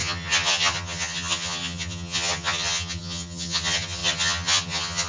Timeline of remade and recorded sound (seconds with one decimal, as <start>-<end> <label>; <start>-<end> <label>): 0.0-5.1 remade